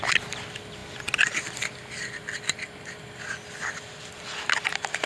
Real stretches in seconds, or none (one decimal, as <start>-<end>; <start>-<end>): 0.0-5.1